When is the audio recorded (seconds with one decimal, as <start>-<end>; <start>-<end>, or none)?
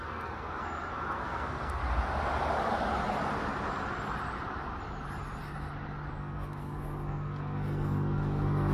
1.8-6.1